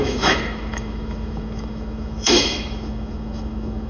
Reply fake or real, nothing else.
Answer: fake